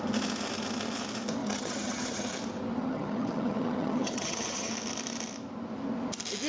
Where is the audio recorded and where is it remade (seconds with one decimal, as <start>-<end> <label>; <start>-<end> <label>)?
0.0-1.4 recorded; 1.4-2.3 remade; 2.3-2.8 recorded; 2.8-4.7 remade; 4.7-6.5 recorded